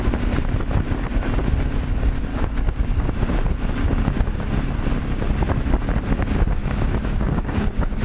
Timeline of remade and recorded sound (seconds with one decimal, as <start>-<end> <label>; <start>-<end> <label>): 0.0-2.3 recorded; 2.3-3.1 remade; 3.1-6.6 recorded; 6.6-8.0 remade